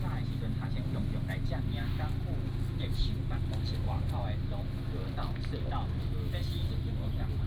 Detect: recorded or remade recorded